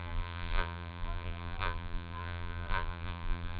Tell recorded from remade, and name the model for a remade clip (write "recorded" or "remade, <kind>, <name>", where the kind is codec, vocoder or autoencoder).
remade, vocoder, BigVGAN v2